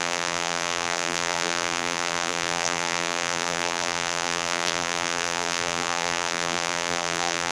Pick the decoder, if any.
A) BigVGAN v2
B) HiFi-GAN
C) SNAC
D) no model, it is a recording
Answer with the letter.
A